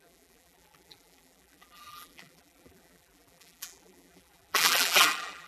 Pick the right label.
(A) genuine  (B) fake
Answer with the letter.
B